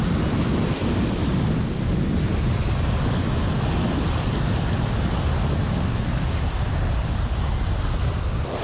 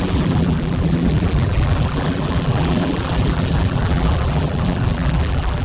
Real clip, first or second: first